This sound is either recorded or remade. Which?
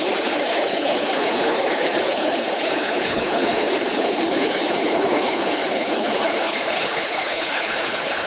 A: remade